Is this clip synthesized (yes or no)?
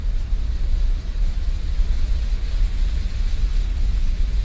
no